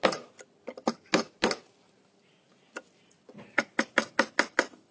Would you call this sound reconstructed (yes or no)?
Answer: no